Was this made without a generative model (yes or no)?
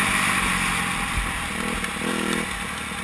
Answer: yes